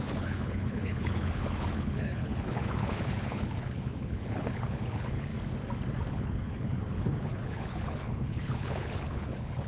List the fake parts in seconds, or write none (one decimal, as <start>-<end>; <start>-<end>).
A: 0.0-5.3; 6.1-9.7